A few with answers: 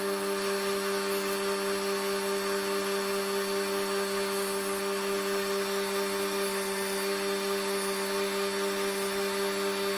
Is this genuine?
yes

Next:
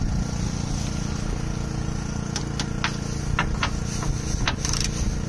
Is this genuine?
yes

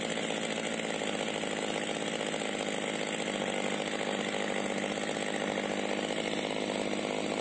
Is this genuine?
yes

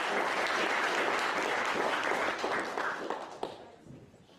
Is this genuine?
yes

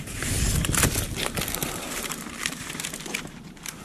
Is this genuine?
no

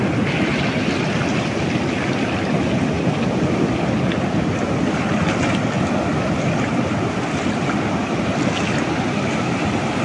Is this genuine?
yes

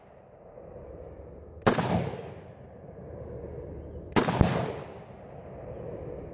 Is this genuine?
yes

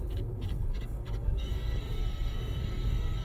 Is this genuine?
no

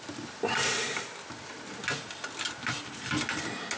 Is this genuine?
yes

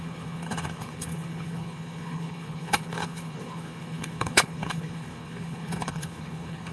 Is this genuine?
no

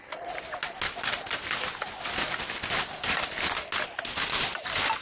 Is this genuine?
yes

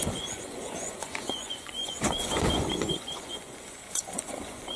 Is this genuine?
no